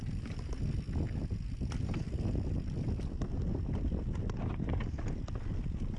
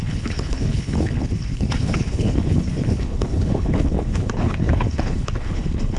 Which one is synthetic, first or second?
second